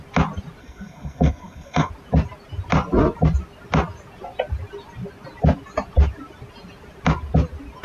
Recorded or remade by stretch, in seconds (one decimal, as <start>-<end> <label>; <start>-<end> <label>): 0.0-0.6 recorded; 0.6-1.9 remade; 1.9-7.8 recorded